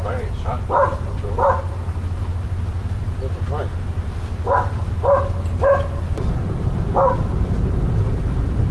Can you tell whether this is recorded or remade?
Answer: remade